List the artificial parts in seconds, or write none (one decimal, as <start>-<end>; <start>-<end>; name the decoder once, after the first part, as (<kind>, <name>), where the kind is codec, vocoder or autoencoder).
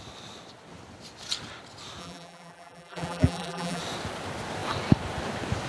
2.0-3.8 (vocoder, BigVGAN v2)